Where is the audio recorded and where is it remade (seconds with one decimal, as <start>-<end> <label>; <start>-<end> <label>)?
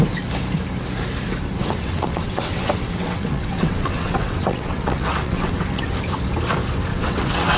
0.0-1.6 recorded; 1.6-5.9 remade; 5.9-6.9 recorded; 6.9-7.6 remade